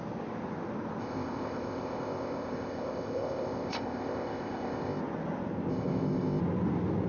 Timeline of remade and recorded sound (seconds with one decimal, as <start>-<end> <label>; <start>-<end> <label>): 0.0-1.0 recorded; 1.0-5.0 remade; 5.0-5.7 recorded; 5.7-6.4 remade; 6.4-7.1 recorded